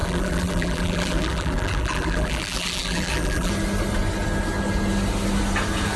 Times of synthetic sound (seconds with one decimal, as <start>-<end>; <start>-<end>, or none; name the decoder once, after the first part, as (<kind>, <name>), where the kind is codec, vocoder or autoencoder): 0.0-3.5 (vocoder, BigVGAN v2)